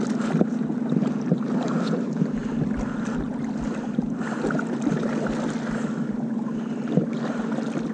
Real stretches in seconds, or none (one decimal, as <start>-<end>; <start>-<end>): 0.0-7.9